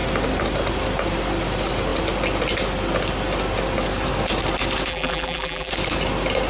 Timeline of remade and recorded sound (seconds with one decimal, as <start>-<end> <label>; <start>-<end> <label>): 0.0-4.9 recorded; 4.9-5.7 remade; 5.7-6.5 recorded